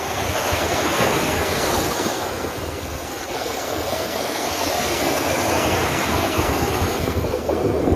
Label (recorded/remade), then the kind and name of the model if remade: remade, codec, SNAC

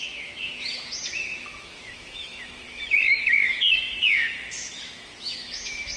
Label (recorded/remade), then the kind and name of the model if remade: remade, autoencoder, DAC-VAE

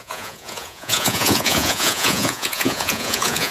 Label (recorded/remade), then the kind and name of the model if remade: remade, vocoder, Vocos